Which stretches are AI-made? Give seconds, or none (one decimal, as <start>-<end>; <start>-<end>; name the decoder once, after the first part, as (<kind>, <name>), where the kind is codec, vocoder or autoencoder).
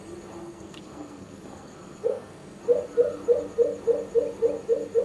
0.4-2.6 (codec, SNAC)